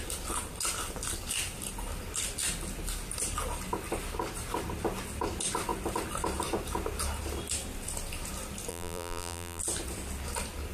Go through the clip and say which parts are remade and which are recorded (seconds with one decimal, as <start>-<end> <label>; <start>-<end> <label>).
0.0-8.7 recorded; 8.7-9.6 remade; 9.6-10.7 recorded